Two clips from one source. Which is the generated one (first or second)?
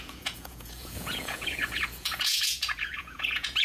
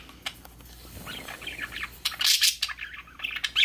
first